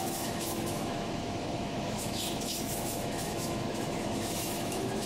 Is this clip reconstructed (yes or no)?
yes